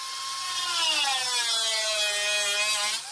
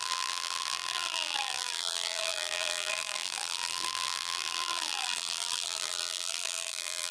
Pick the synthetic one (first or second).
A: second